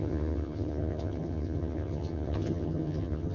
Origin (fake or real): fake